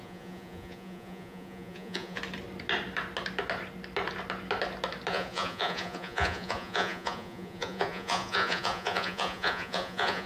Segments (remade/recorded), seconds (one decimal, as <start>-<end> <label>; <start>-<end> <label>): 0.0-2.2 remade; 2.2-5.1 recorded; 5.1-10.3 remade